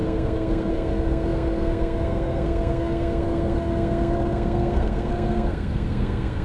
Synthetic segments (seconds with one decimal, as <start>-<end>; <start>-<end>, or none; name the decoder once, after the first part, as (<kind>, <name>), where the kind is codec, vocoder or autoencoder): 0.0-6.4 (codec, SNAC)